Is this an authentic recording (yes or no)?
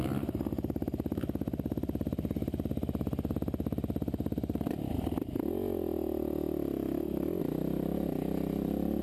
yes